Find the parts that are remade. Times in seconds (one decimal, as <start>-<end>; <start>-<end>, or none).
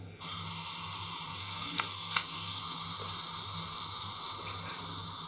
1.4-2.6